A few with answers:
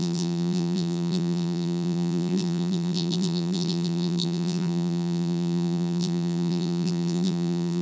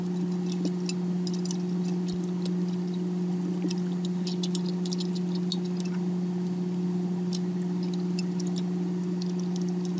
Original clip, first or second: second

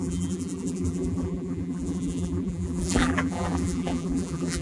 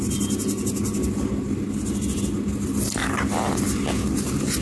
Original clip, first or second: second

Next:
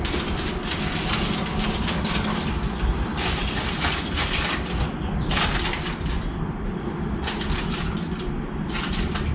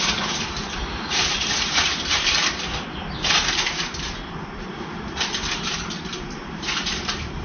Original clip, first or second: first